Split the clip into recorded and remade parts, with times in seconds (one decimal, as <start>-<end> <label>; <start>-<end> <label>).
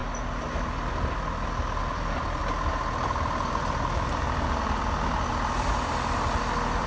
0.0-1.8 recorded; 1.8-2.4 remade; 2.4-5.3 recorded; 5.3-6.9 remade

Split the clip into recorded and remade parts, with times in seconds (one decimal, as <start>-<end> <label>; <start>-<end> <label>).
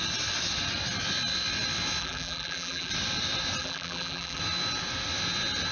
0.0-2.0 recorded; 2.0-2.9 remade; 2.9-3.6 recorded; 3.6-4.4 remade; 4.4-5.7 recorded